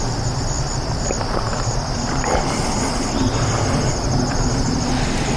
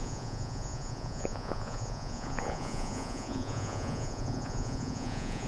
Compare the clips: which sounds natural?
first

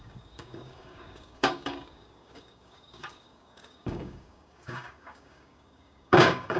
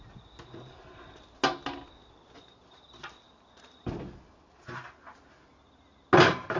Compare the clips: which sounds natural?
second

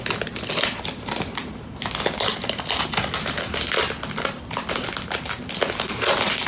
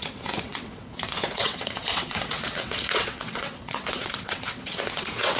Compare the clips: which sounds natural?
first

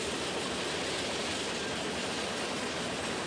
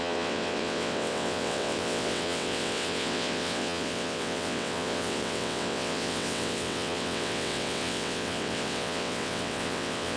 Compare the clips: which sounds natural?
first